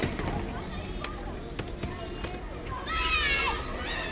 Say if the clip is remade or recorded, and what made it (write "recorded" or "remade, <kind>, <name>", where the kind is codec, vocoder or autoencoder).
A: recorded